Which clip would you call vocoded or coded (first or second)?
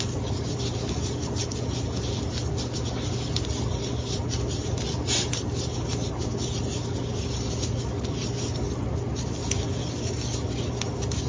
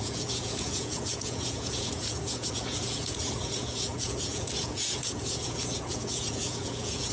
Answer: second